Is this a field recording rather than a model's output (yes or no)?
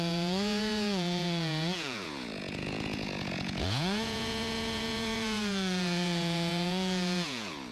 no